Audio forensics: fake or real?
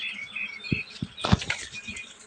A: real